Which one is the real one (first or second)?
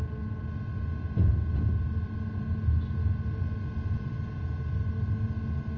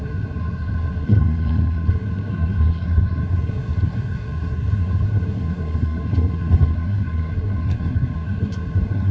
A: first